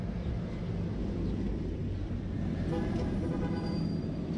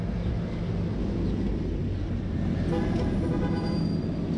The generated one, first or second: first